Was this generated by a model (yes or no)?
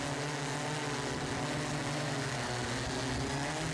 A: no